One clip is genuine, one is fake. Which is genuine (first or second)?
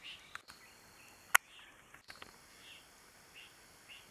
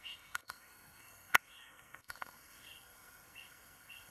first